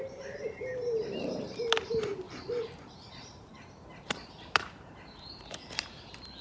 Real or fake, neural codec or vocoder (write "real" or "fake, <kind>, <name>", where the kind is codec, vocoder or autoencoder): fake, vocoder, BigVGAN v2